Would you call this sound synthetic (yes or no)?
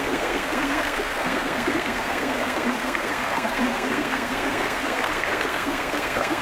yes